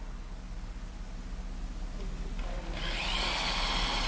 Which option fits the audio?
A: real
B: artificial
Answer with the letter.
A